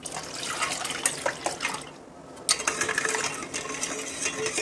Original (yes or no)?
yes